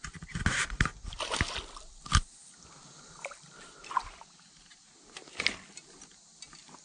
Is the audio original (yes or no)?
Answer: yes